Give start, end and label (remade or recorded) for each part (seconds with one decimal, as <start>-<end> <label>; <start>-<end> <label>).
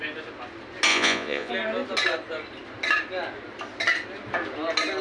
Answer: 0.0-0.9 recorded; 0.9-1.5 remade; 1.5-5.0 recorded